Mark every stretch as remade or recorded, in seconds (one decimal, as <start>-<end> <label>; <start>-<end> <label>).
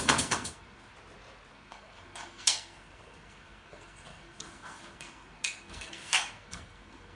0.0-0.9 remade; 0.9-1.5 recorded; 1.5-7.2 remade